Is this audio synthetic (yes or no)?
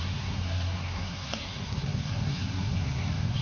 yes